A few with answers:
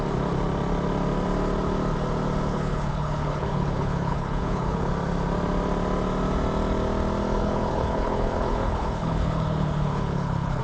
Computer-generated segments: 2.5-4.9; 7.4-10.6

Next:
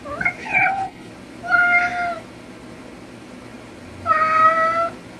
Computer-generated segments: 0.4-1.1

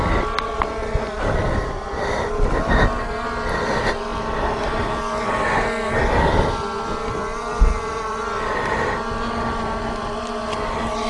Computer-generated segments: none

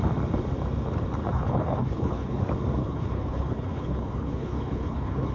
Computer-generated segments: 1.2-2.4; 2.8-5.3

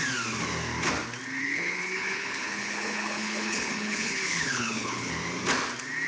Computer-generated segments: 1.4-5.1

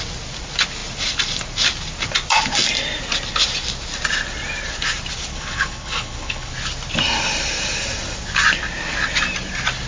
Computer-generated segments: 5.3-6.5

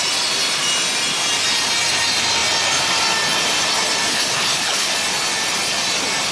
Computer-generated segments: 4.1-4.9

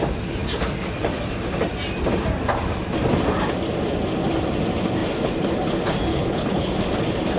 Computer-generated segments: 6.1-6.7